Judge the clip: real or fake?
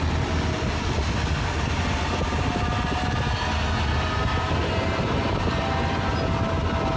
real